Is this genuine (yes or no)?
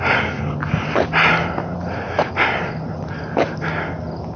yes